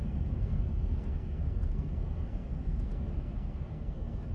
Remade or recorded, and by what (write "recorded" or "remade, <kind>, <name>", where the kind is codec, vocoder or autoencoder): remade, codec, SNAC